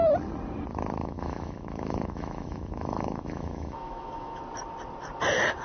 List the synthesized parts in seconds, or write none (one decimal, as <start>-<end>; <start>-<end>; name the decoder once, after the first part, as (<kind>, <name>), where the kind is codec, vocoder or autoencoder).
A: 1.0-4.4 (autoencoder, DAC-VAE)